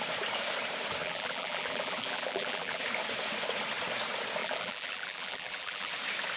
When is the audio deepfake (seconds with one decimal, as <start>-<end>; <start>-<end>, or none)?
1.0-2.8; 4.4-5.9